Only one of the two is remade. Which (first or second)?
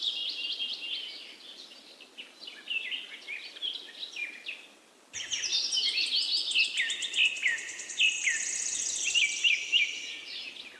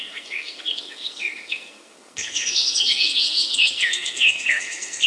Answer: second